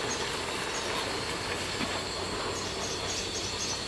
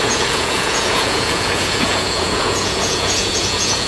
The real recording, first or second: first